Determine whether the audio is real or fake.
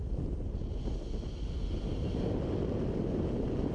real